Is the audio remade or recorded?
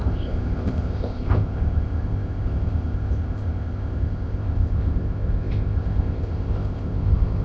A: remade